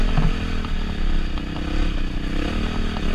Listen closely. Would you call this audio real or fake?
real